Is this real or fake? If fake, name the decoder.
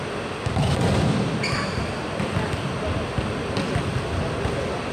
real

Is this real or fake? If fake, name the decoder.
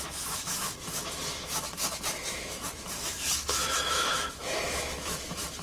fake, autoencoder, DAC-VAE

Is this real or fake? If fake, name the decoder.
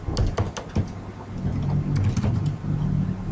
real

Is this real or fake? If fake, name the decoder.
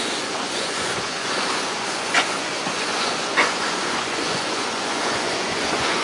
fake, vocoder, Vocos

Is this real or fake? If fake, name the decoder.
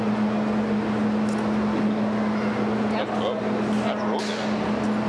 real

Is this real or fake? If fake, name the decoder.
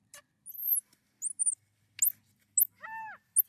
real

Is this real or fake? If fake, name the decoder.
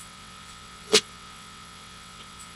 fake, vocoder, WaveNeXt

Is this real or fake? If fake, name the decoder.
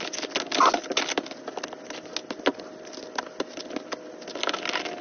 real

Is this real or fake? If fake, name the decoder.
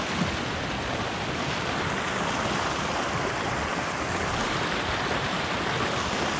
real